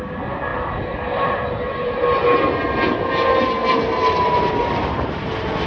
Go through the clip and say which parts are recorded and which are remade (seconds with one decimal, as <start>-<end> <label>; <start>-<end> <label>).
0.0-5.7 recorded